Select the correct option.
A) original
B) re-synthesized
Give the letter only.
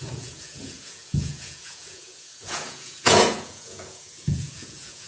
B